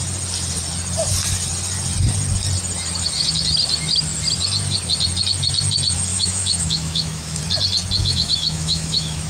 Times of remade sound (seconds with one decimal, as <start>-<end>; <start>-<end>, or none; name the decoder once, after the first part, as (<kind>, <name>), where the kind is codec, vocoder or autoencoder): 6.1-7.4 (autoencoder, DAC-VAE); 8.0-9.3